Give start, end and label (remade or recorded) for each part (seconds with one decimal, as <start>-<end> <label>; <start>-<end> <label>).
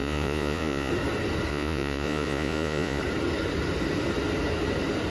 0.0-0.9 remade; 0.9-1.5 recorded; 1.5-3.0 remade; 3.0-5.1 recorded